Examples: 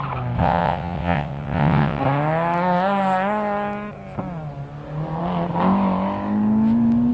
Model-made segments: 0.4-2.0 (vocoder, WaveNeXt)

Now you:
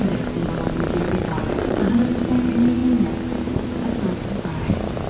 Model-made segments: 1.0-1.8 (vocoder, WaveNeXt)

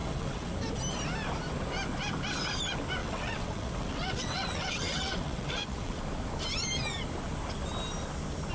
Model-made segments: 0.0-0.5 (vocoder, WaveNeXt); 3.0-6.0

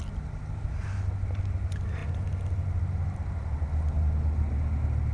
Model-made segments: none

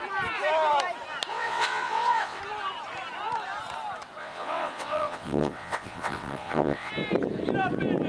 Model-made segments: 1.3-2.4 (vocoder, WaveNeXt); 4.2-6.9